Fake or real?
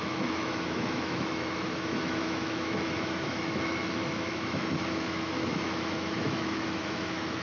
fake